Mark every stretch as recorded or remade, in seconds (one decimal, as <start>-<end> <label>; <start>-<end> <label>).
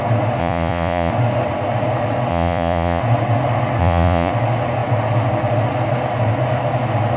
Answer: 0.0-0.4 recorded; 0.4-1.1 remade; 1.1-2.3 recorded; 2.3-3.0 remade; 3.0-3.8 recorded; 3.8-4.3 remade; 4.3-7.2 recorded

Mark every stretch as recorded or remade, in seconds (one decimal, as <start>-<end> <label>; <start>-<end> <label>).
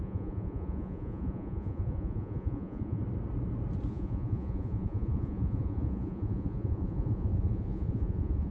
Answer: 0.0-3.0 remade; 3.0-3.9 recorded; 3.9-8.5 remade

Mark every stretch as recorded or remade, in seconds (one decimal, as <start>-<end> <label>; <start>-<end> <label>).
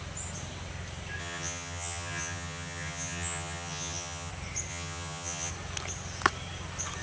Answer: 0.0-1.2 recorded; 1.2-4.3 remade; 4.3-4.7 recorded; 4.7-5.5 remade; 5.5-7.0 recorded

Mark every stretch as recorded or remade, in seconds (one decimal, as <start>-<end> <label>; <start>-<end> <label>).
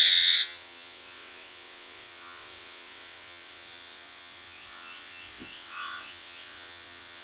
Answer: 0.0-7.2 remade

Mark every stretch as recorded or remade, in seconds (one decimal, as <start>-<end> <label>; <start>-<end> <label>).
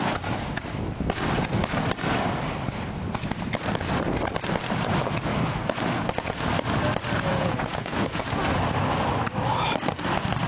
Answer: 0.0-7.3 recorded; 7.3-8.2 remade; 8.2-10.5 recorded